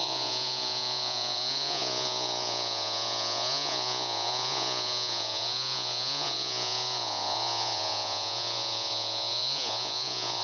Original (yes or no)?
no